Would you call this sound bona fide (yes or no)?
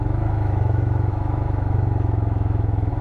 no